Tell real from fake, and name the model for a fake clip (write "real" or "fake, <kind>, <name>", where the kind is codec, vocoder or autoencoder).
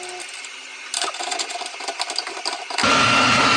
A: real